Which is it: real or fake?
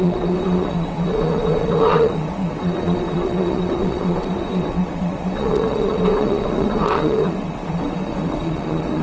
fake